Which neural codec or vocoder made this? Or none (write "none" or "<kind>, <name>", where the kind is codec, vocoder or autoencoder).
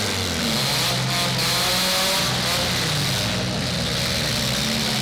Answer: none